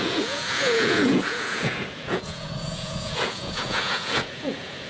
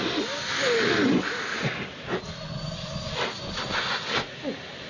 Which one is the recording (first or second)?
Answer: second